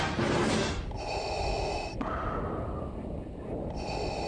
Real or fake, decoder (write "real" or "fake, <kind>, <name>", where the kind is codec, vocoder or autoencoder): real